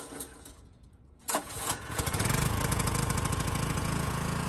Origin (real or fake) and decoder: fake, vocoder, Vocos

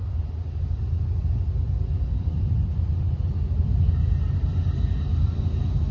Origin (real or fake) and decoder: real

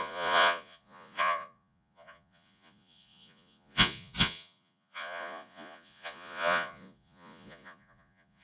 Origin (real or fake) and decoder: fake, vocoder, Vocos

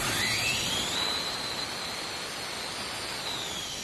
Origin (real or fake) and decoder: real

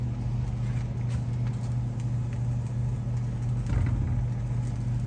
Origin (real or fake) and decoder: real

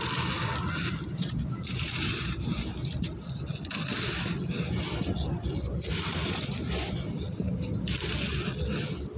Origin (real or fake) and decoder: real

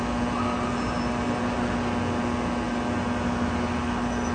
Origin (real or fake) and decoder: real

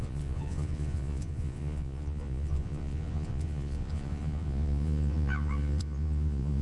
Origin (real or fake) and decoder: fake, vocoder, Vocos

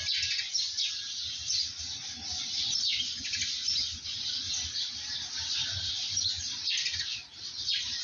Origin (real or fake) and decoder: real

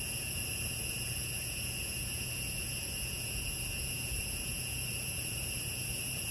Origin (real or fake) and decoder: fake, vocoder, Vocos